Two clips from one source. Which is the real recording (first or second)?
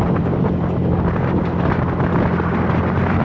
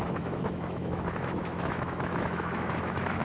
first